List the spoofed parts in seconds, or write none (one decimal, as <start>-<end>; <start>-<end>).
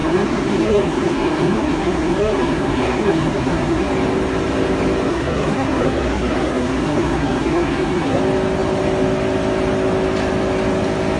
0.0-3.9; 5.1-8.2